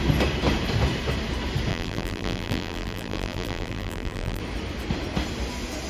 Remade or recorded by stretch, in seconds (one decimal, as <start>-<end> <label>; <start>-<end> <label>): 0.0-1.7 recorded; 1.7-4.4 remade; 4.4-5.9 recorded